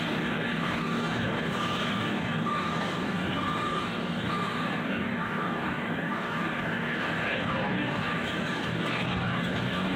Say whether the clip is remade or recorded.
remade